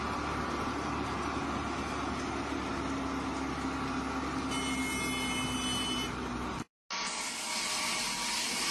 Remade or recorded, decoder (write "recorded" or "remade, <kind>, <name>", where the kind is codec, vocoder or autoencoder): recorded